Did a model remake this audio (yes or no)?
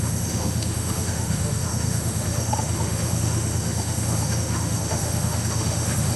yes